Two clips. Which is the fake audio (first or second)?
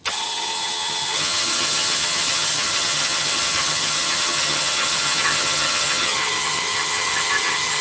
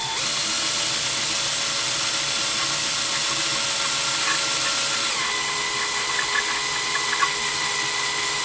first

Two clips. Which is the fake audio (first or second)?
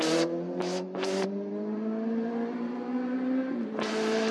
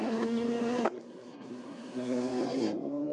second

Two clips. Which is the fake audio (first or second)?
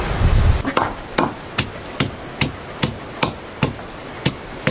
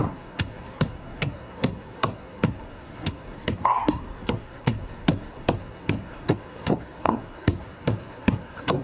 second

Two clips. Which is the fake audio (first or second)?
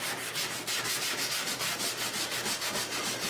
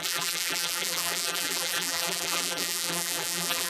second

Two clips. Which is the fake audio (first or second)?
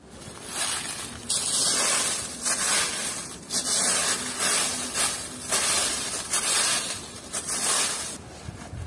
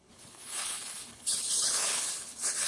second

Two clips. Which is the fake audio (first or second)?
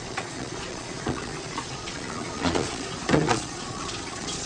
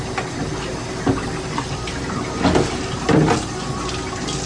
first